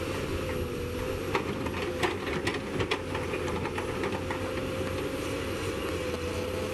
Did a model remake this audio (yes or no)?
no